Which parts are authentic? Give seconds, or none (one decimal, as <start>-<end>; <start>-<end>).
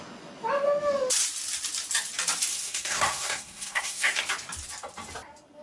0.0-2.5; 4.2-5.6